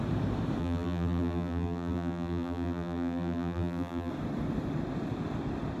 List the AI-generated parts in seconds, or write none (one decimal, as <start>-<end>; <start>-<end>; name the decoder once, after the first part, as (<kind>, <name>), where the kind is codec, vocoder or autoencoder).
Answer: 0.6-4.1 (vocoder, BigVGAN v2)